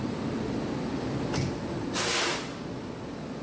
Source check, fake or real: real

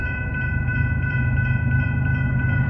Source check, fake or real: fake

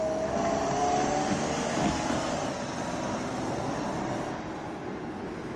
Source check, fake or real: real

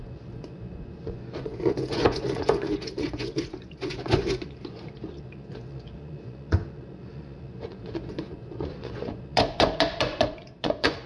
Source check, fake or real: fake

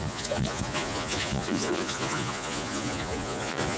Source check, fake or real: fake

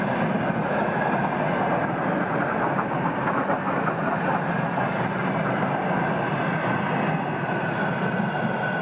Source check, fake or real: real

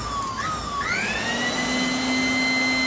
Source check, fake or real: real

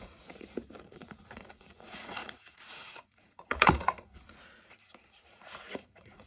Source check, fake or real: fake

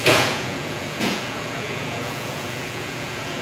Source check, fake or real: fake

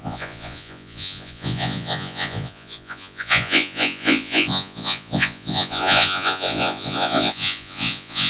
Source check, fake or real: fake